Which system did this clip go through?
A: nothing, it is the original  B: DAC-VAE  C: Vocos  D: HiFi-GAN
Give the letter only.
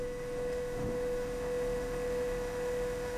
B